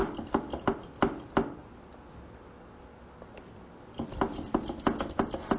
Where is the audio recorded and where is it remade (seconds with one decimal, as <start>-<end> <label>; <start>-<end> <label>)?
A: 0.0-5.6 recorded